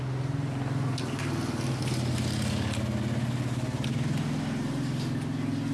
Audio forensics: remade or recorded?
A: recorded